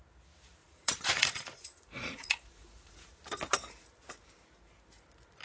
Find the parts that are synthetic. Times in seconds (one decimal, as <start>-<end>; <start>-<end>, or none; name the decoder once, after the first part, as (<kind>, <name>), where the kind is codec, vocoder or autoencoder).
0.6-3.1 (vocoder, Vocos)